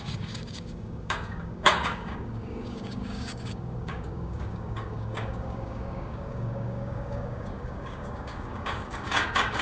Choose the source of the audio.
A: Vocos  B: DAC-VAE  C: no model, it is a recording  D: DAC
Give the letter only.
D